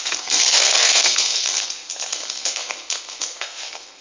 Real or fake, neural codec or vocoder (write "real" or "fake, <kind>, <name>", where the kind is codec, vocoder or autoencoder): fake, codec, SNAC